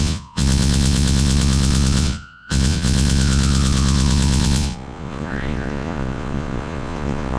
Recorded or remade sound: remade